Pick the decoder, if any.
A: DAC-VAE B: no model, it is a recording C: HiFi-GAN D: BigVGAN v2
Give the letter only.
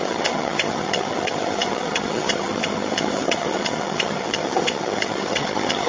C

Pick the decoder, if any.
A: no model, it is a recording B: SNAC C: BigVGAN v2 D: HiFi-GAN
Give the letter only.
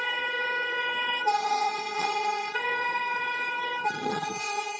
D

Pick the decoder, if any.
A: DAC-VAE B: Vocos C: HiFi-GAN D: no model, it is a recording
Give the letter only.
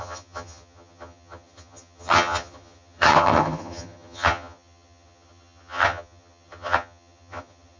C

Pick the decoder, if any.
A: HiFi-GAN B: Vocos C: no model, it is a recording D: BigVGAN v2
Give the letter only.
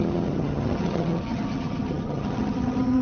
A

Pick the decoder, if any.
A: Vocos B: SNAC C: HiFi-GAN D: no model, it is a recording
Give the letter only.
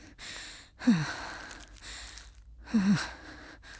D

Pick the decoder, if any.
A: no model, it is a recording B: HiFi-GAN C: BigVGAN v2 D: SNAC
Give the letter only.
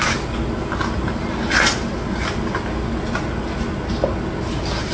A